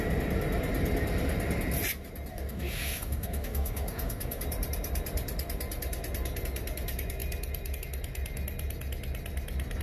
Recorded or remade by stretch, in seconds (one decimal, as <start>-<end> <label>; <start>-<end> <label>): 0.0-2.3 recorded; 2.3-4.4 remade; 4.4-9.8 recorded